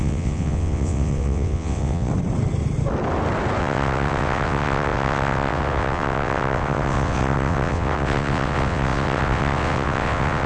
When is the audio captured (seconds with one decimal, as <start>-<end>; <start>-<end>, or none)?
2.1-3.6